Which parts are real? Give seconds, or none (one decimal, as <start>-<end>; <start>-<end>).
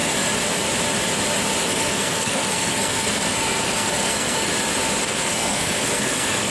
0.0-1.6; 4.5-5.0